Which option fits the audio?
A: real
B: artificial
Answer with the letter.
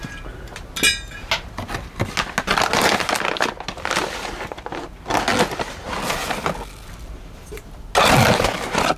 A